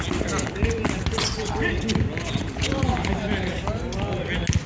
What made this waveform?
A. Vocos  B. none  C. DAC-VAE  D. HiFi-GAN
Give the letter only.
B